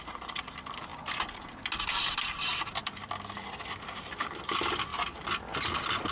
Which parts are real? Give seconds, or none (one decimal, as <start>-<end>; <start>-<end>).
0.9-1.8; 2.8-3.6